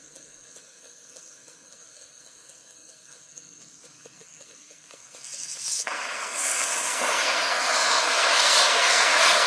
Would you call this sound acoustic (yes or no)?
no